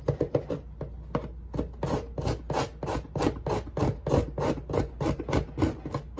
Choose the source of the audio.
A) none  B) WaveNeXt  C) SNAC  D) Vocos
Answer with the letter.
A